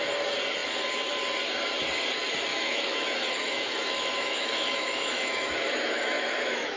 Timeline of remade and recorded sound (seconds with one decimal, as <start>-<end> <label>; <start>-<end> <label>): 0.0-2.5 recorded; 2.5-6.8 remade